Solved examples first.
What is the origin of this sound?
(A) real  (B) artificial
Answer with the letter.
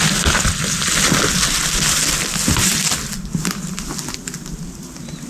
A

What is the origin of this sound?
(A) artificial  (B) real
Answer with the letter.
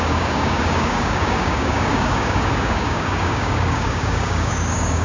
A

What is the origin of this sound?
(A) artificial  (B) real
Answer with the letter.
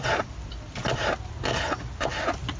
B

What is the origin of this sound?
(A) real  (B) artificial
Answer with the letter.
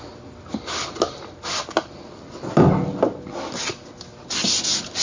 A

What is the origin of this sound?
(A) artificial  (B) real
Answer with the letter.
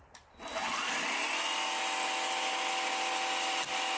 B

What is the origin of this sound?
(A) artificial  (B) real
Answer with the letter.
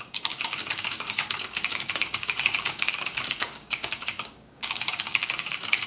A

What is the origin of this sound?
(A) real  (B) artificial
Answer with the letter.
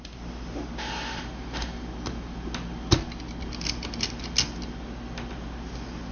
A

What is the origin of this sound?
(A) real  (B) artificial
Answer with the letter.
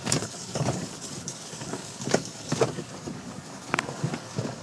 B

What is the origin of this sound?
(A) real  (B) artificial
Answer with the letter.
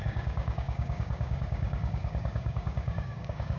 B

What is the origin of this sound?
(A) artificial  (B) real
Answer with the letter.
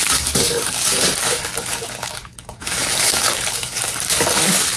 A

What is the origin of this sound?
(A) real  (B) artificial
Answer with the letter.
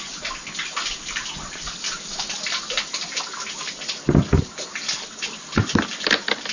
A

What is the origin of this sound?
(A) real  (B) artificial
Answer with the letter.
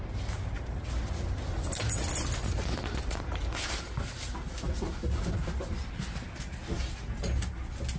A